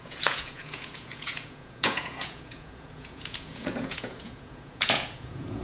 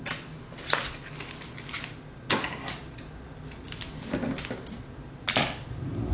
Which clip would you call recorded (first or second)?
second